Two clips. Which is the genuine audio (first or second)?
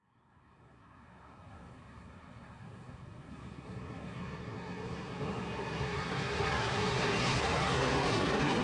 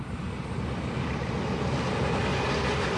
second